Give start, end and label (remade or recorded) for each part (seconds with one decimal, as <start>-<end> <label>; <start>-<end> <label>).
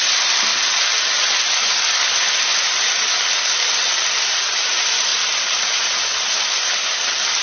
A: 0.0-2.5 recorded; 2.5-4.2 remade; 4.2-5.1 recorded; 5.1-6.8 remade; 6.8-7.4 recorded